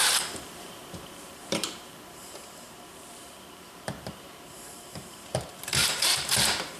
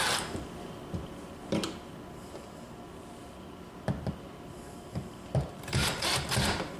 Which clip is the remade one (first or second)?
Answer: first